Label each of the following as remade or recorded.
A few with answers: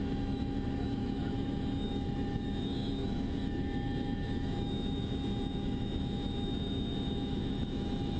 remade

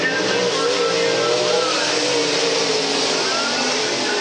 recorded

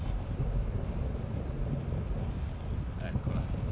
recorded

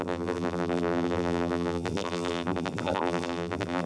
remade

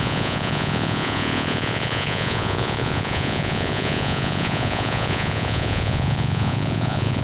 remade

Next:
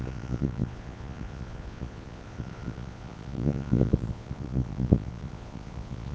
remade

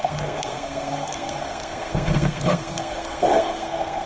remade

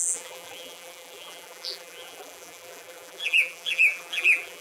remade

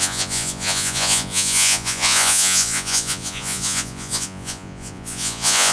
remade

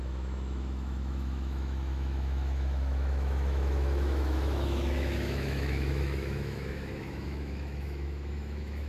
remade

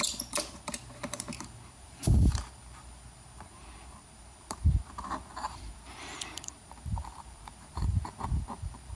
remade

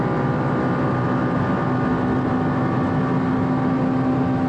recorded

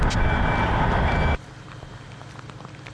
recorded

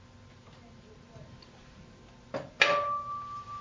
recorded